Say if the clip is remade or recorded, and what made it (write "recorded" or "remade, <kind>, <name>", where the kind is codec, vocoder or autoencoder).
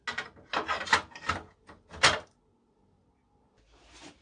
recorded